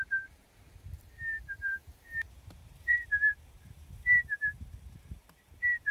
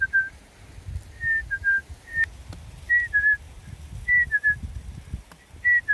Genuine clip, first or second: second